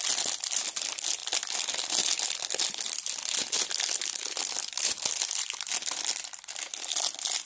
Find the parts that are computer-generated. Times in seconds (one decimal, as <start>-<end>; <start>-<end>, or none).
none